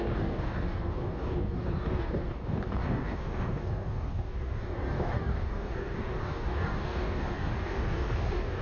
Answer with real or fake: fake